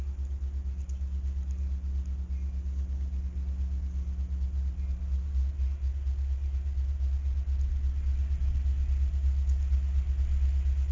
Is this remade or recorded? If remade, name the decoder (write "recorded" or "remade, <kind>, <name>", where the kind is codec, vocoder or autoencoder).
recorded